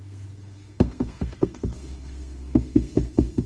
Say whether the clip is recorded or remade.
remade